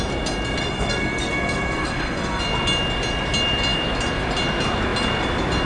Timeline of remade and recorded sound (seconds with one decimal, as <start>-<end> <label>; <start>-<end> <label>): 0.0-0.6 recorded; 0.6-2.4 remade; 2.4-5.7 recorded